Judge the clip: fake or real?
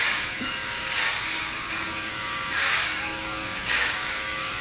fake